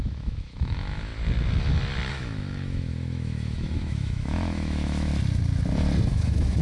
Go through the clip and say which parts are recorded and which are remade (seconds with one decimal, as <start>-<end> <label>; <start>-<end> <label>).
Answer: 0.0-1.1 remade; 1.1-2.1 recorded; 2.1-5.1 remade; 5.1-6.1 recorded; 6.1-6.6 remade